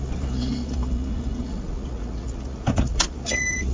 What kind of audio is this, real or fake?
fake